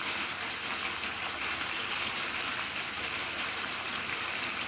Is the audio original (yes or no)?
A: yes